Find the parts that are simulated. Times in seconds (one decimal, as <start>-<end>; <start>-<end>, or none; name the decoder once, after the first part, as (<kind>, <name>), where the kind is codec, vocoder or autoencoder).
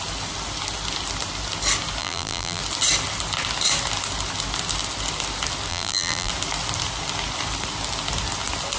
2.0-2.6 (vocoder, BigVGAN v2); 5.7-6.3